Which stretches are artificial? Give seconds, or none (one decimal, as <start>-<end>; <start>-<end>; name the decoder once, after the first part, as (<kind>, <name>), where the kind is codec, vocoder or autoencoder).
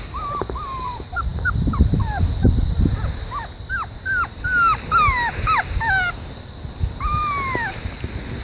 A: none